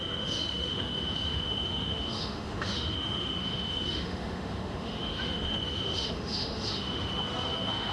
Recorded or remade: remade